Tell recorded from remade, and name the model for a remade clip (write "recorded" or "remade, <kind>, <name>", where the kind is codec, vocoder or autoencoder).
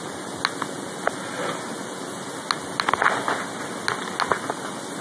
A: recorded